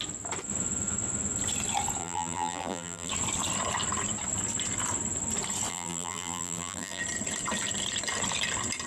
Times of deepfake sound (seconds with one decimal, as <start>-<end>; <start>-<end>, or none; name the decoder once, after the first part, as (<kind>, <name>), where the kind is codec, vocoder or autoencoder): 2.0-3.1 (vocoder, BigVGAN v2); 5.7-7.0